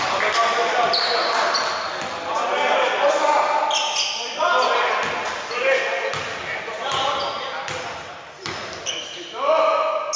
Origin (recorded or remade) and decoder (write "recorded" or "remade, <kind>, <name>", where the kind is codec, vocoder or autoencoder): recorded